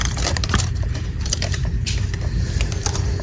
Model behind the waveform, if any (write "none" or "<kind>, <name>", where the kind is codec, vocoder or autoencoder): vocoder, BigVGAN v2